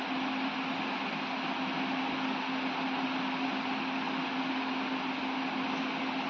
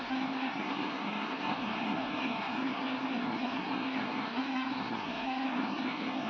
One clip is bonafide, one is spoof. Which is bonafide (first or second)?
first